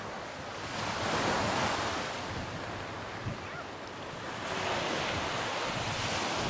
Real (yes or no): yes